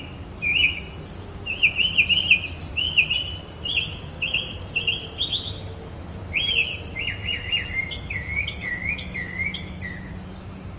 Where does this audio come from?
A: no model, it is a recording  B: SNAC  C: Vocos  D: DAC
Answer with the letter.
A